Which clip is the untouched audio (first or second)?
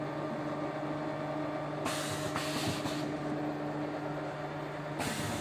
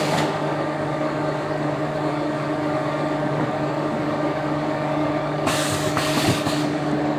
first